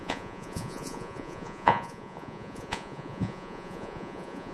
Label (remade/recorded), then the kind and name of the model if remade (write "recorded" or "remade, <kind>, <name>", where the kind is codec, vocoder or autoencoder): remade, vocoder, Vocos